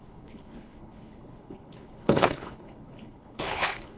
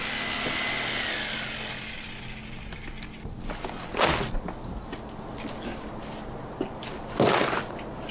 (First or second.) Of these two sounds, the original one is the second